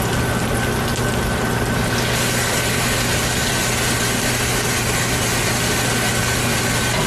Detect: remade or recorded recorded